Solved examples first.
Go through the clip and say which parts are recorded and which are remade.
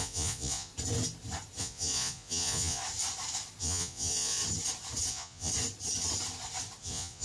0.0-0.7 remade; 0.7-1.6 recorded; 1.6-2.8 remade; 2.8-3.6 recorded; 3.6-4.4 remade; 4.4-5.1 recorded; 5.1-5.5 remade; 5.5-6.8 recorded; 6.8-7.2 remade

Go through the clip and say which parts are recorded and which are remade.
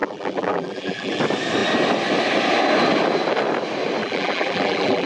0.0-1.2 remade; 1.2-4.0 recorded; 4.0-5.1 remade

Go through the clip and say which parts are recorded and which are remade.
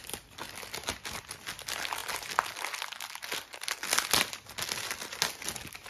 0.0-5.9 recorded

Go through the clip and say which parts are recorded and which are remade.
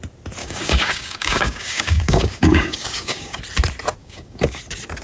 0.0-0.4 recorded; 0.4-3.4 remade; 3.4-4.0 recorded; 4.0-4.6 remade; 4.6-5.0 recorded